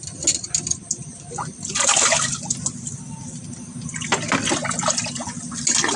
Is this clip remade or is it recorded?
recorded